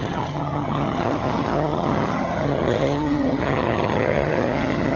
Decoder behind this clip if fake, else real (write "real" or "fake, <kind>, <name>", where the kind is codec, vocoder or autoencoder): fake, vocoder, HiFi-GAN